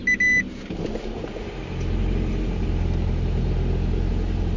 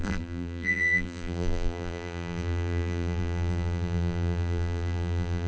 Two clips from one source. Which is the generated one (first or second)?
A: second